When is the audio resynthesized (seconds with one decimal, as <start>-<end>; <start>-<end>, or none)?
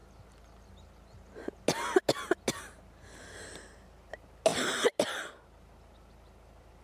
none